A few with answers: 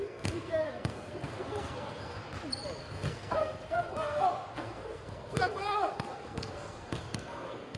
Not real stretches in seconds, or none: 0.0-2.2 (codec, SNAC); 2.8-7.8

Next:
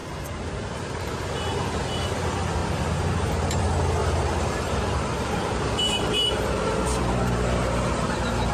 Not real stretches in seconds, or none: 0.0-1.1 (vocoder, BigVGAN v2); 2.6-3.6; 4.0-8.1

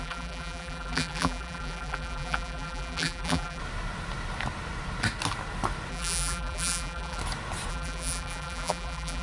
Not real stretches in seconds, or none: 0.0-3.6 (vocoder, BigVGAN v2); 5.9-7.2; 7.7-9.2

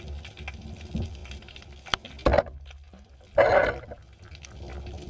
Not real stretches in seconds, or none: none

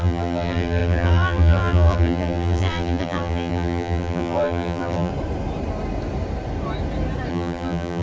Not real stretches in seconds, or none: 0.0-5.1 (vocoder, BigVGAN v2); 7.3-8.0

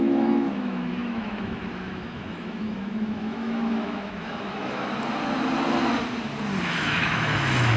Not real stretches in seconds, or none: 0.0-4.8 (autoencoder, DAC-VAE); 6.6-7.8

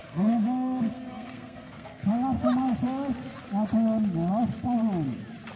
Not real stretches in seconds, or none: 0.0-2.1 (codec, SNAC)